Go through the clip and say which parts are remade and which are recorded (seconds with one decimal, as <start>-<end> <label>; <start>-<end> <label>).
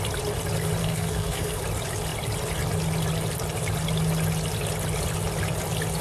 0.0-0.8 recorded; 0.8-1.6 remade; 1.6-6.0 recorded